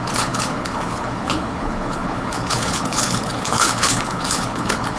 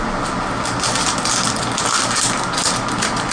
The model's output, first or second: first